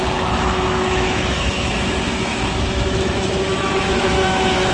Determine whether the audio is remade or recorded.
remade